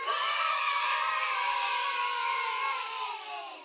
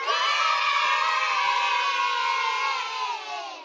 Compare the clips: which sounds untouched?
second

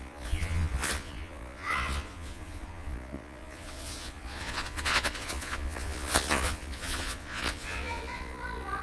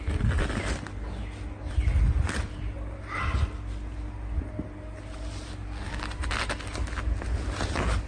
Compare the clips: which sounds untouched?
second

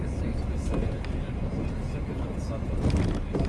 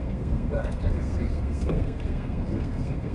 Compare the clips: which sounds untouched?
first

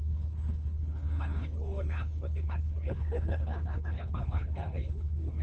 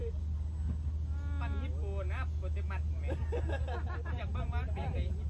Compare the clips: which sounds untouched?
second